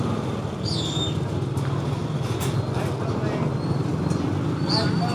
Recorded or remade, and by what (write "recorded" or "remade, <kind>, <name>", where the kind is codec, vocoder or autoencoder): recorded